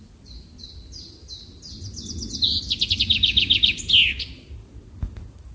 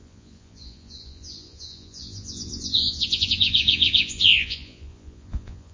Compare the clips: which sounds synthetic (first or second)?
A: second